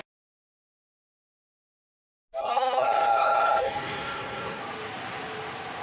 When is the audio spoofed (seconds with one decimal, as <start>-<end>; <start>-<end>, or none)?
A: 2.4-4.6